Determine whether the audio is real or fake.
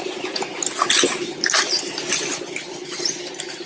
real